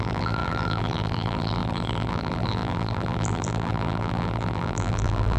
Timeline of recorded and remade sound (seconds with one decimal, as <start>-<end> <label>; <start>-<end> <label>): 0.0-5.4 remade